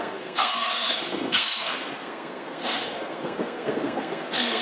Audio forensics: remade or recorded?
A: remade